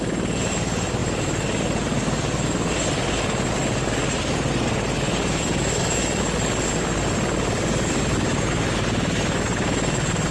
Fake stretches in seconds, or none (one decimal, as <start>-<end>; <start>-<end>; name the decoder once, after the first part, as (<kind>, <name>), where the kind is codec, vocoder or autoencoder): none